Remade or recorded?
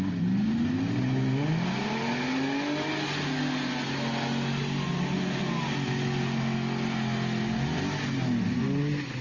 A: recorded